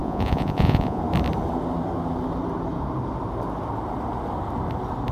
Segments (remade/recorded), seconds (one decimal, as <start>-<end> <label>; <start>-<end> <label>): 0.0-1.0 remade; 1.0-5.1 recorded